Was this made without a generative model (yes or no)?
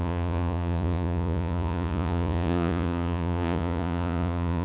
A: no